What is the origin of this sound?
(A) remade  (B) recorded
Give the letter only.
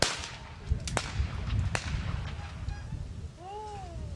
B